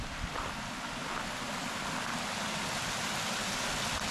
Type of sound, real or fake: real